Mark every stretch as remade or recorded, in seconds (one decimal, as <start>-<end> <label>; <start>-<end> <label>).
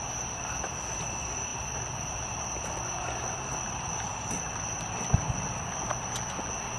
0.0-6.8 recorded